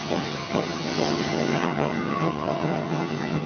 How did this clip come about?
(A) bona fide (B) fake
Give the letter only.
B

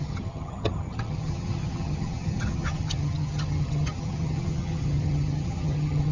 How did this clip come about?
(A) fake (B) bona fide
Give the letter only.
A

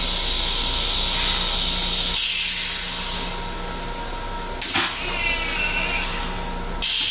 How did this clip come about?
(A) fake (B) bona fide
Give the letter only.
B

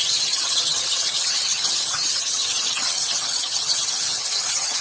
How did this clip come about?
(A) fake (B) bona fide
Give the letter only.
A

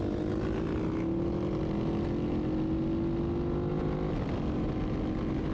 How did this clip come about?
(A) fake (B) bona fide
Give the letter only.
B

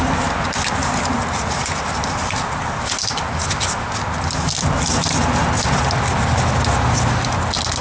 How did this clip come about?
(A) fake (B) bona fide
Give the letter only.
B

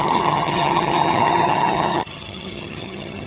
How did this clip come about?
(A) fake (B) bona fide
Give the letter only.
A